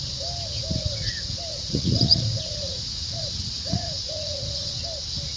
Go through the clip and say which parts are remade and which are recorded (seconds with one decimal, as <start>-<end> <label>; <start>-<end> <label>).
0.0-1.5 recorded; 1.5-4.7 remade; 4.7-5.4 recorded